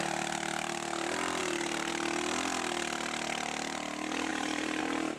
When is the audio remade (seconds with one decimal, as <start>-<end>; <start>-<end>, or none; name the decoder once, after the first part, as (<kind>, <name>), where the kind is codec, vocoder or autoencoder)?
1.4-1.9 (vocoder, BigVGAN v2); 4.3-4.8